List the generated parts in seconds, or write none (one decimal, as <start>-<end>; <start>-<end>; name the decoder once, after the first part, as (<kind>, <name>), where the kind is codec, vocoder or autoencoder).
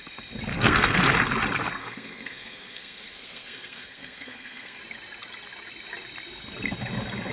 0.5-1.0 (codec, SNAC); 1.8-4.8